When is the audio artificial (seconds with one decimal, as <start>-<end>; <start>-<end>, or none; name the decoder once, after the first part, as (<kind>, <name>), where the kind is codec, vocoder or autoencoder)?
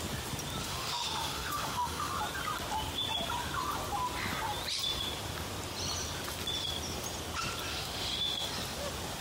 0.6-2.1 (autoencoder, DAC-VAE); 7.7-8.5